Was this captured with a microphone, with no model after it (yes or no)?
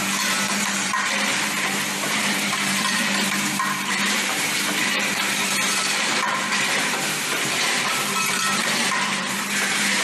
no